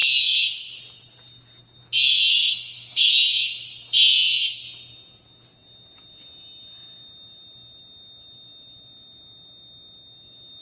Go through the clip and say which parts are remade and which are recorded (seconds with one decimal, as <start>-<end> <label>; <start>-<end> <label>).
0.0-2.3 recorded; 2.3-3.1 remade; 3.1-10.6 recorded